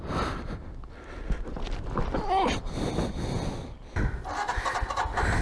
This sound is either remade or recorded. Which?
recorded